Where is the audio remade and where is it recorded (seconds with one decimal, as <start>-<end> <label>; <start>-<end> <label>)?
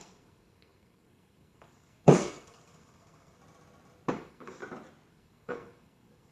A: 0.0-3.4 remade; 3.4-4.1 recorded; 4.1-4.6 remade; 4.6-5.1 recorded; 5.1-6.3 remade